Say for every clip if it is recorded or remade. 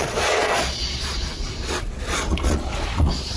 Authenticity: remade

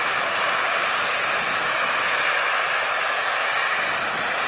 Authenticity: recorded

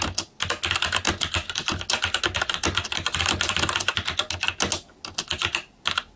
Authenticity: recorded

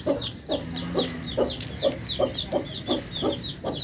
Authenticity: recorded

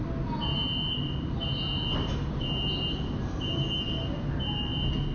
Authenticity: recorded